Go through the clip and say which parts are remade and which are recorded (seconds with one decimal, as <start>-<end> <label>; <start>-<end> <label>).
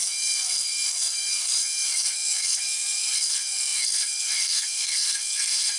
0.0-5.8 remade